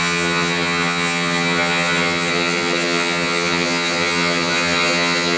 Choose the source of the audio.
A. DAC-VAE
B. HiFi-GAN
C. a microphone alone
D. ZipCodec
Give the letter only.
B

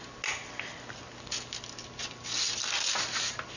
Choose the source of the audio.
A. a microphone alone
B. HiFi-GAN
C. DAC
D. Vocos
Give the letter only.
A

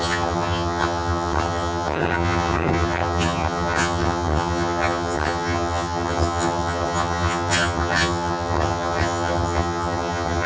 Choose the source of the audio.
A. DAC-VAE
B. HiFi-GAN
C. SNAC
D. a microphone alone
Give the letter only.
B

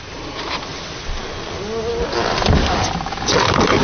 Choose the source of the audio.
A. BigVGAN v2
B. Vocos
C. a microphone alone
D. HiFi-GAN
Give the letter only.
C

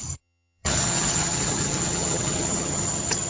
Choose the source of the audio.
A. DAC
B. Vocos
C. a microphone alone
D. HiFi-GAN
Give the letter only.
D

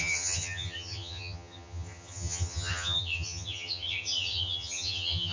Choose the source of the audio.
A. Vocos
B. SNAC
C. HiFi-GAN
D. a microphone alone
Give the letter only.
C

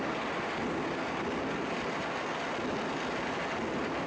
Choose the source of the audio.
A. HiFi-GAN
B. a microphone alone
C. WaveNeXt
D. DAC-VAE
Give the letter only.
B